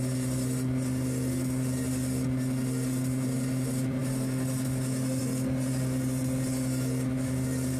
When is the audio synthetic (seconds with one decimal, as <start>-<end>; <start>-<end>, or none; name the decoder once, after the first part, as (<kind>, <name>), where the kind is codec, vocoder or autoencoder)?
0.0-4.0 (vocoder, BigVGAN v2); 5.2-7.8